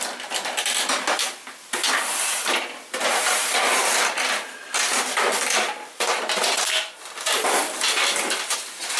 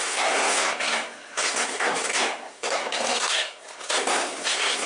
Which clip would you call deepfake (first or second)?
second